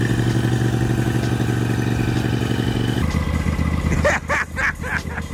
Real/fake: real